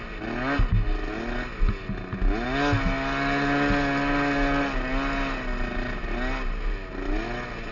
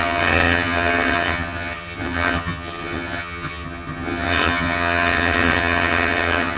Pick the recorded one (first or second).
first